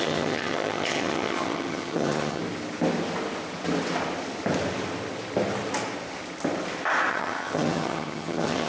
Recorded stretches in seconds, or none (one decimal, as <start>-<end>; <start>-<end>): 2.4-7.1